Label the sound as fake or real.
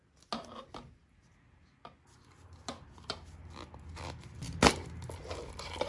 real